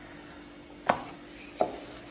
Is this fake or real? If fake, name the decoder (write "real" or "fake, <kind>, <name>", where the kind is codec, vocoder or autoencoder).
real